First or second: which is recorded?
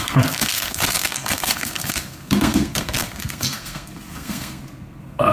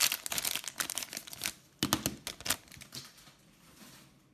second